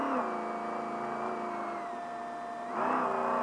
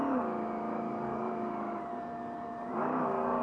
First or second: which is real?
first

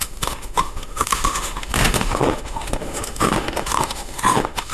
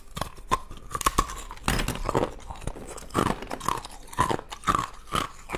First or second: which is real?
second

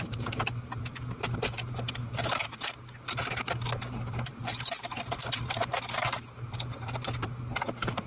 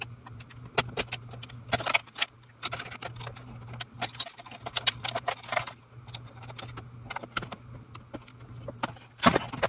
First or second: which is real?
second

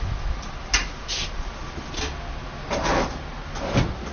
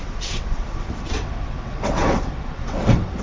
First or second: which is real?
first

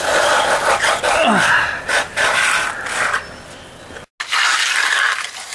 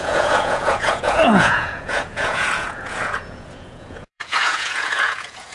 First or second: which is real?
first